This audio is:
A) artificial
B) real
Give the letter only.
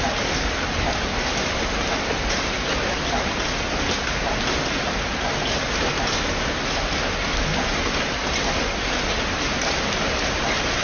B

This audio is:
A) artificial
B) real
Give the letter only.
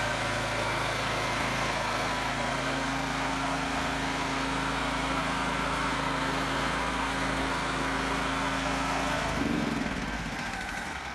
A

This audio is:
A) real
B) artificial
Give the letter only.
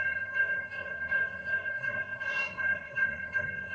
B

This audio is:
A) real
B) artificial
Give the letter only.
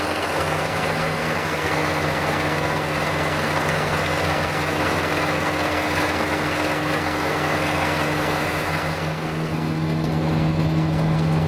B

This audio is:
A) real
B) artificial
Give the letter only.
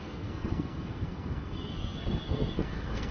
B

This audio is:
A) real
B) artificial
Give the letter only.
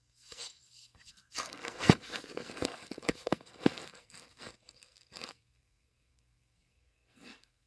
B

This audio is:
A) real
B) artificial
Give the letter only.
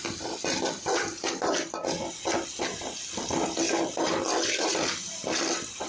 A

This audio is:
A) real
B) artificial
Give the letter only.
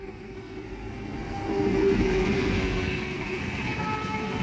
B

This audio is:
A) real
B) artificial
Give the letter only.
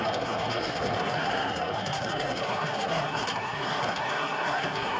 B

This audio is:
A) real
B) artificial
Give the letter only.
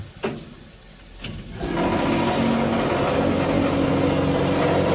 A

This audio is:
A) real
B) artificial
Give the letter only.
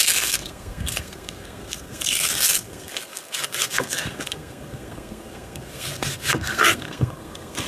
B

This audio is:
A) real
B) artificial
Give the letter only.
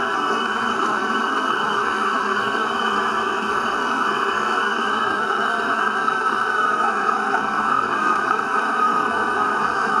B